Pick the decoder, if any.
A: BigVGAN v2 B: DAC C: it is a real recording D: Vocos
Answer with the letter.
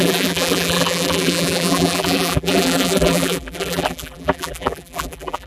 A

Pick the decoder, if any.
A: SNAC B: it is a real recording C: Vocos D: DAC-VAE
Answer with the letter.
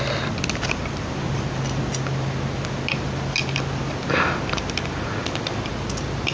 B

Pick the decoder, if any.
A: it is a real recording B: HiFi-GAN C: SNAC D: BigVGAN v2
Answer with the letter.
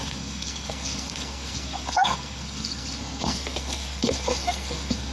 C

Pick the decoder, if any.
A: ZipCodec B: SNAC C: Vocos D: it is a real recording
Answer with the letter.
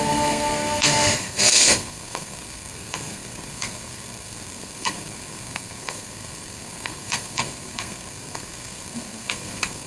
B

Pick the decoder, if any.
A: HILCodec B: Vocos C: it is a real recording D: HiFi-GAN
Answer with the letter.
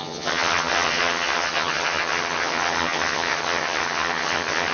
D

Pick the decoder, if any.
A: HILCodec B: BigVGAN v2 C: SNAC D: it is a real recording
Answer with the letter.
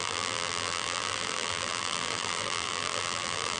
B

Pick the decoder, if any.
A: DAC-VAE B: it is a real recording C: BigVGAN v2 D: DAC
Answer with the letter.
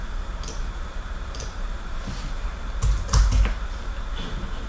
B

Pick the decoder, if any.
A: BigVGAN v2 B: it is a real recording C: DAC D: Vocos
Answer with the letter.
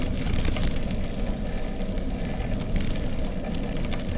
B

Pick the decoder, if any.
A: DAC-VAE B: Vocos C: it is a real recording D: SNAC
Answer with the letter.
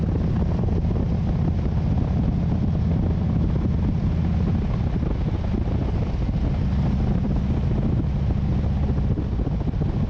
C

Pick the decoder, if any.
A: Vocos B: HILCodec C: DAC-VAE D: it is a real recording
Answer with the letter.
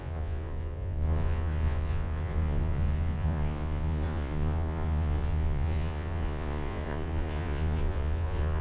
A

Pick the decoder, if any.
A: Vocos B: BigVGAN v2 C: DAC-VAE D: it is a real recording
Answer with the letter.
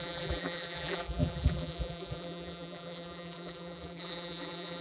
B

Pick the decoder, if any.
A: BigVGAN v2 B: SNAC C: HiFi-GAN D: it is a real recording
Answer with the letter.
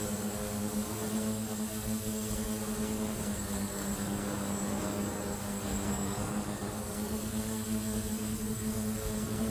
B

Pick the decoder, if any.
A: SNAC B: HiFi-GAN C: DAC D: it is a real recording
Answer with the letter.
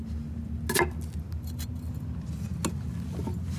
D